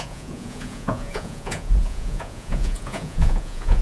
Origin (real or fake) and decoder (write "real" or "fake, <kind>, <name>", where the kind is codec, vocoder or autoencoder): fake, vocoder, Vocos